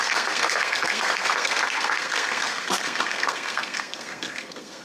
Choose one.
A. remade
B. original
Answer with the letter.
A